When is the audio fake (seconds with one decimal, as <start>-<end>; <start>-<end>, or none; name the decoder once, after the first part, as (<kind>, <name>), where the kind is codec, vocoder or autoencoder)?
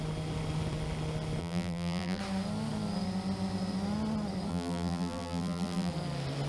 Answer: 1.4-2.2 (vocoder, BigVGAN v2); 4.5-5.9